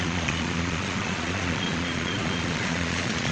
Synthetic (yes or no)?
yes